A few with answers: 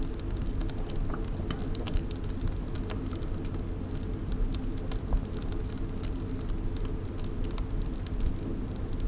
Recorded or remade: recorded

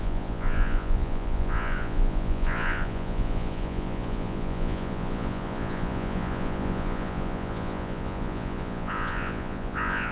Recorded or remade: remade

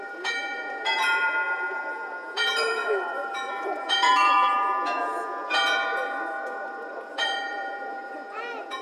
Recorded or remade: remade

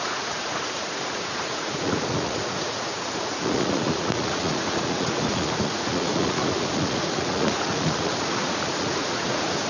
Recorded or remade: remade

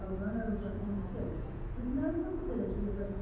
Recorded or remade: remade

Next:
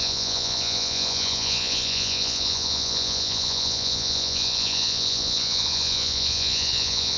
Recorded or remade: remade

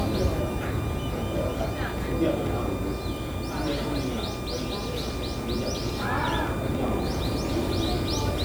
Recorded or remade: recorded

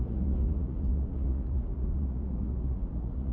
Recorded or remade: remade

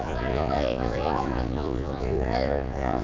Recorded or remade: remade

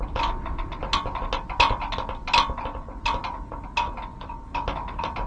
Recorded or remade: recorded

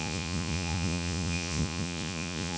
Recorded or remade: remade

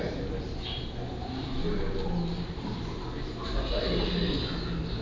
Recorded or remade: recorded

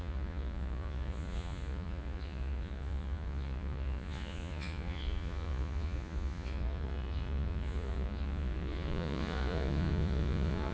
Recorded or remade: remade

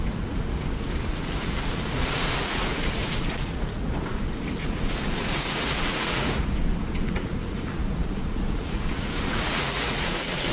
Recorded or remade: remade